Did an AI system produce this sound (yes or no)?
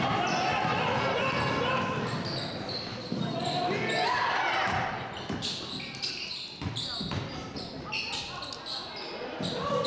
no